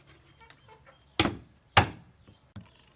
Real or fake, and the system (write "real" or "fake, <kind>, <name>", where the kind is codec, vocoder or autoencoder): real